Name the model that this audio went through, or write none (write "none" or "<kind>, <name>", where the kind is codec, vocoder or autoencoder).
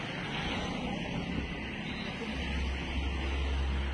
none